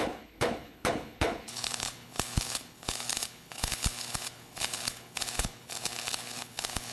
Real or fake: fake